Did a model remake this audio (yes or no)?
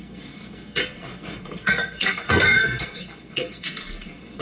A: yes